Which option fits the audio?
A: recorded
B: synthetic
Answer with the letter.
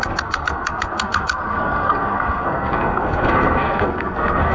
B